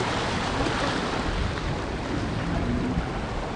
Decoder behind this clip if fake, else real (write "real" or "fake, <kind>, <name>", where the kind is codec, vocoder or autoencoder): real